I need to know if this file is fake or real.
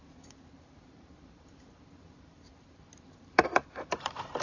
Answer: fake